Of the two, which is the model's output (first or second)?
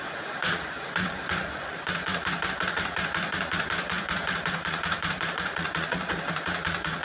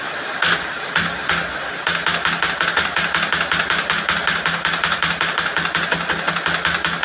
first